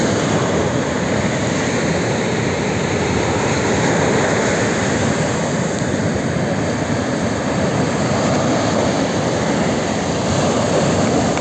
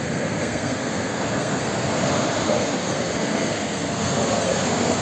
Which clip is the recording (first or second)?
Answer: first